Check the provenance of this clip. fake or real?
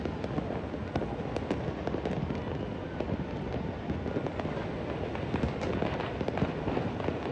real